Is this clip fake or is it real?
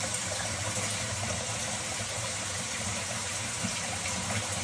fake